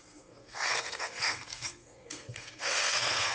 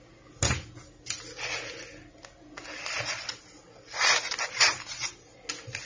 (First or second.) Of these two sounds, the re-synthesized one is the first